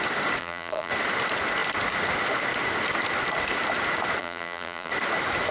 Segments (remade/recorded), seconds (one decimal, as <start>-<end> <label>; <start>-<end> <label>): 0.0-0.4 recorded; 0.4-0.9 remade; 0.9-4.2 recorded; 4.2-4.9 remade; 4.9-5.5 recorded